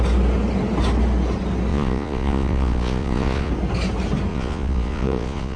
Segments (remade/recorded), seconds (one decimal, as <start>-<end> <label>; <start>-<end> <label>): 0.0-1.7 recorded; 1.7-3.5 remade; 3.5-4.3 recorded; 4.3-5.6 remade